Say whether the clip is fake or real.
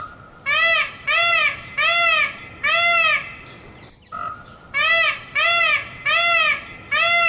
real